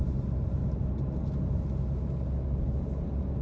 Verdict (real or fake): real